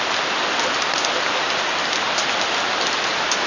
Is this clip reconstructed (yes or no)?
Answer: no